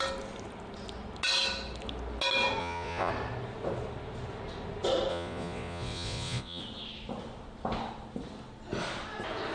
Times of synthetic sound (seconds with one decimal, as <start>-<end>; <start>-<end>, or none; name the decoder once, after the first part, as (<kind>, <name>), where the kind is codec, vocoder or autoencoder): 2.6-3.1 (vocoder, Vocos); 5.1-6.6